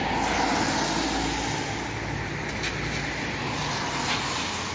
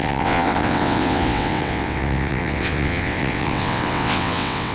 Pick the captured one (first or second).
first